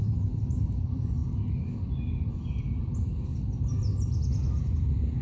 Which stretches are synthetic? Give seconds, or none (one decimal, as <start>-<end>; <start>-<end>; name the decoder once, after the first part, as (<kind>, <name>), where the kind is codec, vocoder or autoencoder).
0.0-1.2 (vocoder, BigVGAN v2); 2.3-3.3; 4.6-5.2